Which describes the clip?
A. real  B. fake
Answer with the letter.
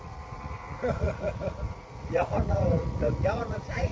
B